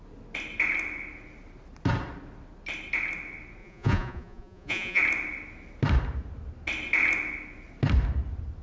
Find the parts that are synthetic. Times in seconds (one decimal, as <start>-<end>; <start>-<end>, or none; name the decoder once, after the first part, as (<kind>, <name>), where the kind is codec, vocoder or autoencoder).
3.6-5.0 (vocoder, Vocos)